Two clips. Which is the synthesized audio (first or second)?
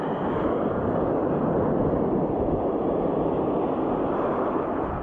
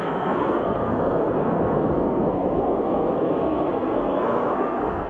second